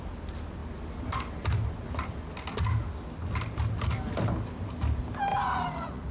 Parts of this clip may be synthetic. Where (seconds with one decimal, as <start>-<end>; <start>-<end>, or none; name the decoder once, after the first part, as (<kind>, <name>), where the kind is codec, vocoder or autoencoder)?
5.3-6.1 (vocoder, Vocos)